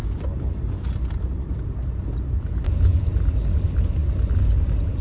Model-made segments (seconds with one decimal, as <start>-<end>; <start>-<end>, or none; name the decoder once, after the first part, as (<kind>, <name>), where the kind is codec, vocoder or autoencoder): 0.0-1.6 (vocoder, BigVGAN v2)